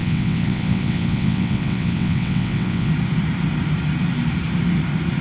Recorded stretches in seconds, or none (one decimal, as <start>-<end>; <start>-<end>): 2.9-5.2